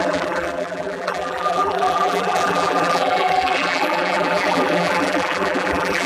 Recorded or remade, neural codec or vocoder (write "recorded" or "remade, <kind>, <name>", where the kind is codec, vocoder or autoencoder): remade, vocoder, BigVGAN v2